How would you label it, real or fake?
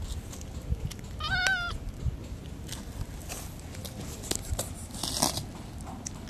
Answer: real